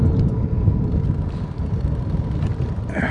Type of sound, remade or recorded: recorded